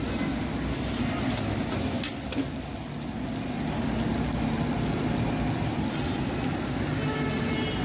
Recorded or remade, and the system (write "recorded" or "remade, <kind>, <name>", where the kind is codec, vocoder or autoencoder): recorded